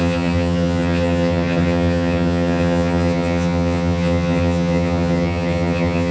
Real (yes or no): no